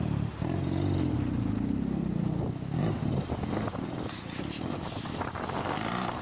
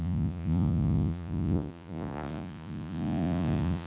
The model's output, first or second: second